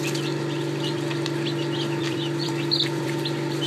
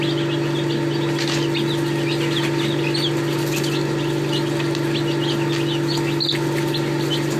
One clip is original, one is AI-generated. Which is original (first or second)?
second